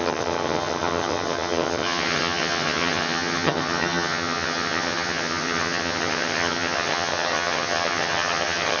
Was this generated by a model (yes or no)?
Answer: yes